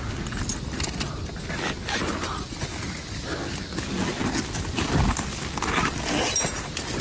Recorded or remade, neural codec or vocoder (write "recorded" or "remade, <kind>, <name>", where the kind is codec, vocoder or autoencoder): recorded